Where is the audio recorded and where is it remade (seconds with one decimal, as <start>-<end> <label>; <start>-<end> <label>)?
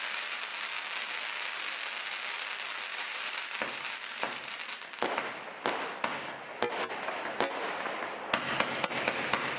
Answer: 0.0-2.9 recorded; 2.9-4.8 remade; 4.8-9.6 recorded